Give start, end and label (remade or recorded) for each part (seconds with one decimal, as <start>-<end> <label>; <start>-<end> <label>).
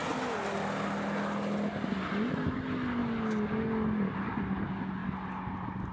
0.0-5.9 recorded